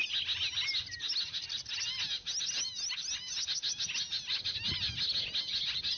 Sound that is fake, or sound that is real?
real